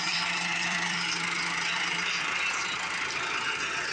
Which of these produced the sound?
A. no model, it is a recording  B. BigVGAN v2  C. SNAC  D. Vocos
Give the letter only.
B